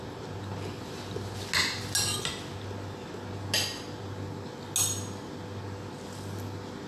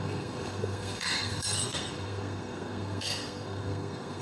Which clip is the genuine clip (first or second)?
first